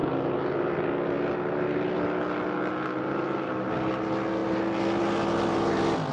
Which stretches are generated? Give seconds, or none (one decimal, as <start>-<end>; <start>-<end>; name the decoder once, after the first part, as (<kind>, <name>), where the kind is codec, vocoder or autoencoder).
none